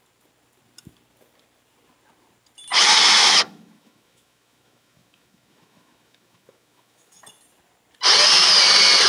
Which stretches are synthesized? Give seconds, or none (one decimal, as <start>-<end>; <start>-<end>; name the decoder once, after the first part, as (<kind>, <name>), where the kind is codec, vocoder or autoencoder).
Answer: 3.2-7.2 (autoencoder, DAC-VAE)